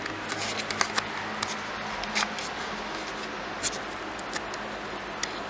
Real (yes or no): yes